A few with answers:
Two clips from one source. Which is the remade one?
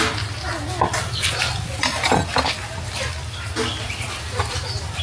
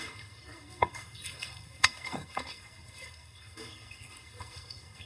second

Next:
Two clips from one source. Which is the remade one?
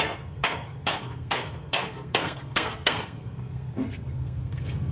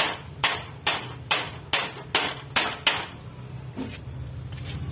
first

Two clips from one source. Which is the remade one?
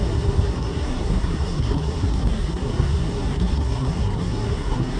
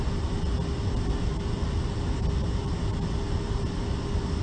first